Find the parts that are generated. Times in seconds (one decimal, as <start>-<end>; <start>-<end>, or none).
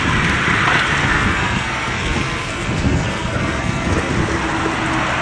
1.0-4.1